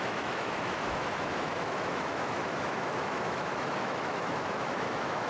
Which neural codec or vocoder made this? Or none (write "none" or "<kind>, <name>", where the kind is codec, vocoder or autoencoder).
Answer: autoencoder, DAC-VAE